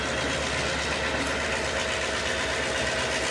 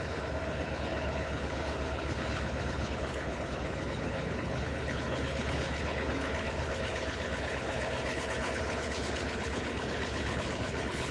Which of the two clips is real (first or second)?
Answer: first